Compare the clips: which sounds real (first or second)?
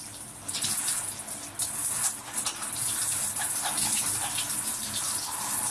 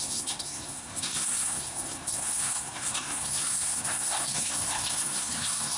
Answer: first